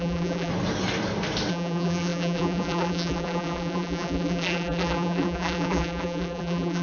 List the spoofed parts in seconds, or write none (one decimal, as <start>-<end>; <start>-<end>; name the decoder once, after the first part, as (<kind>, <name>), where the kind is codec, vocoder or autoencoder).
0.0-0.5 (vocoder, BigVGAN v2); 1.5-6.8